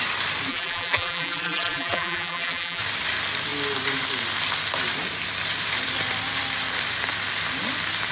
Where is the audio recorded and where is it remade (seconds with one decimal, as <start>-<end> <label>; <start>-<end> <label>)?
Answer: 0.0-0.5 recorded; 0.5-2.8 remade; 2.8-8.1 recorded